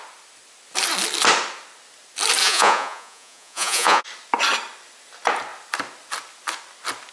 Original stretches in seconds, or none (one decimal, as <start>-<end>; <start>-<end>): 0.0-2.4; 4.0-7.1